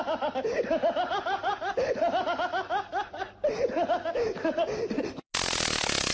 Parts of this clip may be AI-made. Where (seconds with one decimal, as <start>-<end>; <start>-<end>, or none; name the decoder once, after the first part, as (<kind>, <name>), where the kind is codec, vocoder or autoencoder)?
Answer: none